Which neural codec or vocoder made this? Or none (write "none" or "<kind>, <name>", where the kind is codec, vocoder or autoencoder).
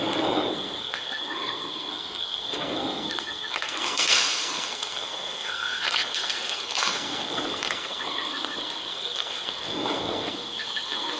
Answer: codec, SNAC